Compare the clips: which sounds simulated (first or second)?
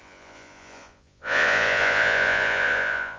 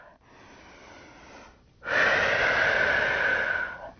first